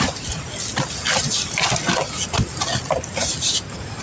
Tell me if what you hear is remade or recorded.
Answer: recorded